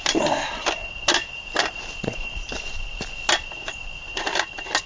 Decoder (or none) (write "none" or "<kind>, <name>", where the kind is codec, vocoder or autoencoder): none